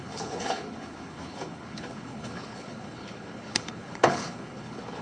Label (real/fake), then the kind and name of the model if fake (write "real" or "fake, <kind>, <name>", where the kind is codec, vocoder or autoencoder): fake, codec, HILCodec